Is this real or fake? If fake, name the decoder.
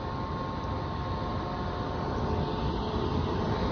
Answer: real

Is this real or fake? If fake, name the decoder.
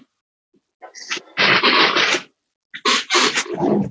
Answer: real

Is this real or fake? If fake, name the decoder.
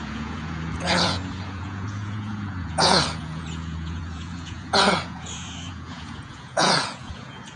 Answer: fake, vocoder, Vocos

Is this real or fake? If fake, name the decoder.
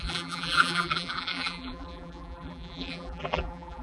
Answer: fake, vocoder, BigVGAN v2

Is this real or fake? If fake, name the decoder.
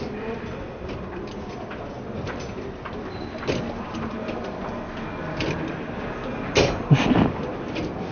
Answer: real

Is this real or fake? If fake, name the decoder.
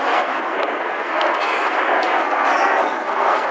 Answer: fake, codec, SNAC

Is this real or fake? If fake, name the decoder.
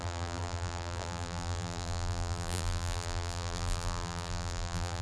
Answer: fake, vocoder, BigVGAN v2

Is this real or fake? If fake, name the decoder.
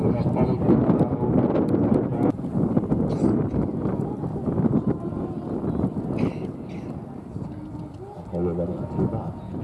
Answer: real